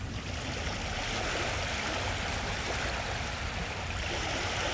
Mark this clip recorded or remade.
recorded